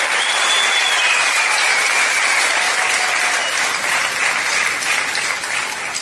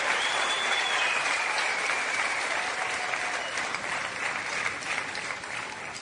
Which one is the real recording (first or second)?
first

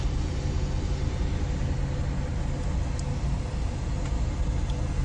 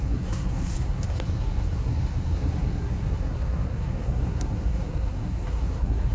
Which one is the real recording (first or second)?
first